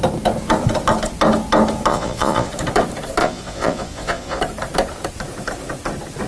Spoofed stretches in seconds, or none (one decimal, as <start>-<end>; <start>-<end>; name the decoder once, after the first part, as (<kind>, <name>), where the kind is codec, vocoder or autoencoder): 1.9-2.5 (vocoder, Vocos); 3.2-4.4